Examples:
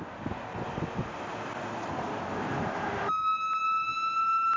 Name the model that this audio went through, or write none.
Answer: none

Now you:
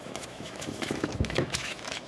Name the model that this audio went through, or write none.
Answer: autoencoder, DAC-VAE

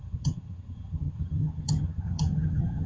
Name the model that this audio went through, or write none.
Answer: vocoder, HiFi-GAN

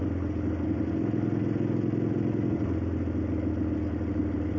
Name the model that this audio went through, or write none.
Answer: none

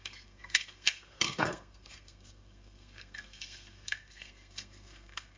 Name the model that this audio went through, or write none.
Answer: codec, SNAC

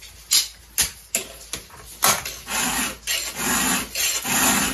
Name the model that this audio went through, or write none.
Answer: none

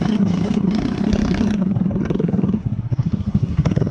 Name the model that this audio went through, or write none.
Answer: codec, SNAC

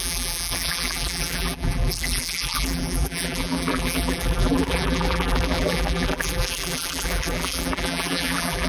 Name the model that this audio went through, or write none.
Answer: vocoder, BigVGAN v2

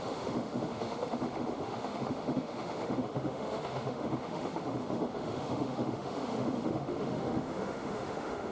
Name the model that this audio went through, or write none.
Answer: autoencoder, DAC-VAE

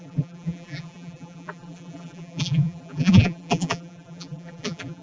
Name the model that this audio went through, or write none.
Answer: vocoder, BigVGAN v2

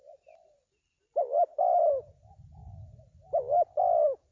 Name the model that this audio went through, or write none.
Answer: none